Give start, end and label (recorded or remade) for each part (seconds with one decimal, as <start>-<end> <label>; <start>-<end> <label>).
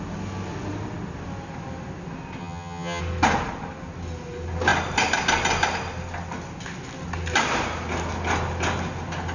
0.0-2.4 recorded; 2.4-3.0 remade; 3.0-9.3 recorded